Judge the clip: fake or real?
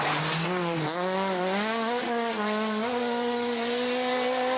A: real